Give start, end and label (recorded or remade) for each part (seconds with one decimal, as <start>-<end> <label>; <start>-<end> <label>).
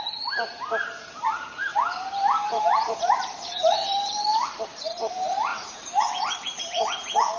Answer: 0.0-7.4 remade